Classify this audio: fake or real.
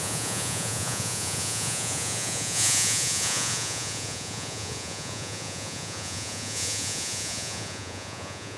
fake